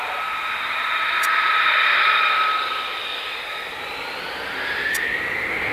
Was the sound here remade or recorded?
recorded